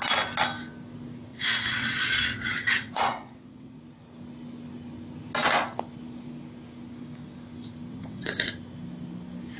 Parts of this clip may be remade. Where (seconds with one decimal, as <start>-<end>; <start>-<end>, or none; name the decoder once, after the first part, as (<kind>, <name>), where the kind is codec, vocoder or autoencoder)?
1.3-3.8 (vocoder, WaveNeXt); 7.9-8.5